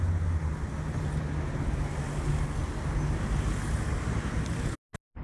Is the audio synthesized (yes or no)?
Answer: no